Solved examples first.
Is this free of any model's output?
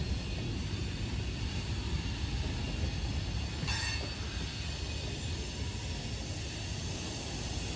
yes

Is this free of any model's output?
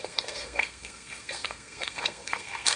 no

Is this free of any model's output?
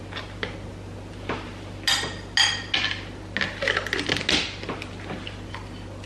yes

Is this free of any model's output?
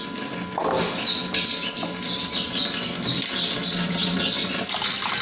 yes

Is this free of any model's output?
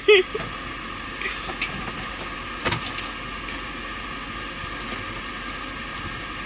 yes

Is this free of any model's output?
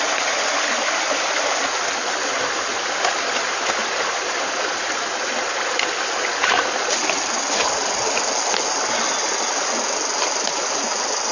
yes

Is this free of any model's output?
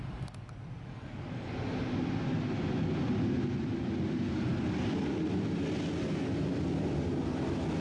yes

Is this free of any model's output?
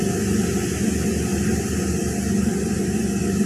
yes